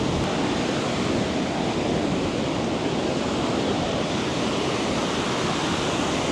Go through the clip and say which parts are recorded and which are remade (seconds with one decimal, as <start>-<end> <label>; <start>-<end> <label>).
0.0-6.3 recorded